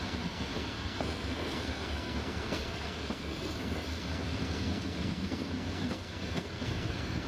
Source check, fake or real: fake